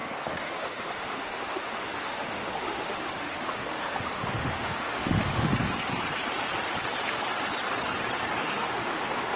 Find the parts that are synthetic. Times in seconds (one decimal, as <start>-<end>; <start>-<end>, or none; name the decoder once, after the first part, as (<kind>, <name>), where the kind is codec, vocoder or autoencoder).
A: 0.0-5.5 (autoencoder, DAC-VAE); 8.4-9.4